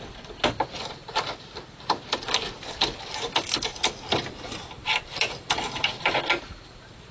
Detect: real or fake real